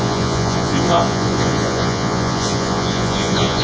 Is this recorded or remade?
remade